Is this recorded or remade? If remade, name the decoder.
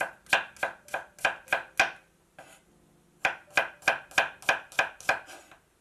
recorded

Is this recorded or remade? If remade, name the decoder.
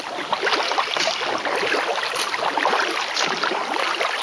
recorded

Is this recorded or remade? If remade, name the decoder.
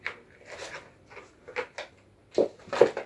recorded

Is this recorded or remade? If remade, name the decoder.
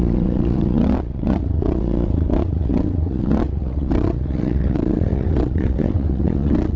remade, vocoder, WaveNeXt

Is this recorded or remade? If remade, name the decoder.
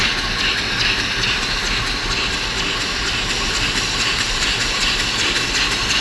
recorded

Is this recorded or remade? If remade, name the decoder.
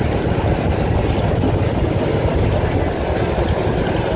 recorded